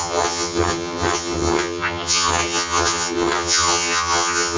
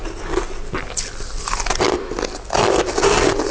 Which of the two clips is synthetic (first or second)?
first